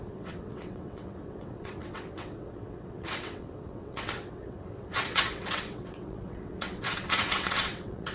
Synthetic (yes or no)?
yes